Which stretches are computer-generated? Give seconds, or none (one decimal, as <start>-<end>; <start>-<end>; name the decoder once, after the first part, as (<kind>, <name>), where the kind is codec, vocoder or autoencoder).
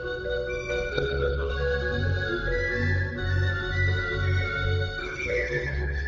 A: 0.9-1.5 (codec, HILCodec); 5.0-6.1